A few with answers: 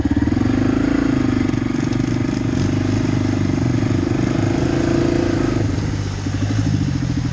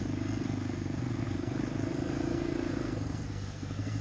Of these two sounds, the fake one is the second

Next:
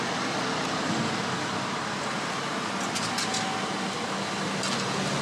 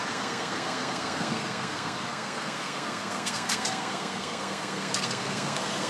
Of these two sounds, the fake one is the second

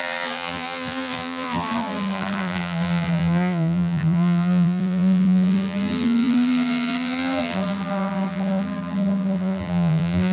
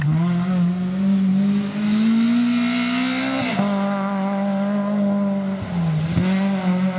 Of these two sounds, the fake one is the first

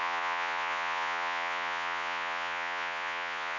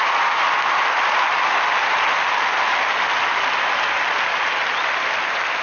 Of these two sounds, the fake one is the first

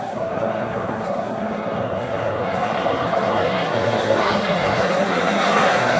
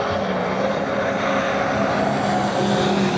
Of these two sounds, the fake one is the first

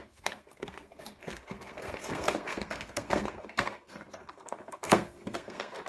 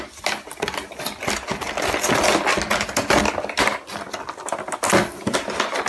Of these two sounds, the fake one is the first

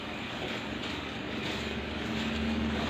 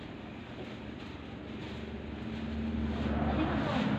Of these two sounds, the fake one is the first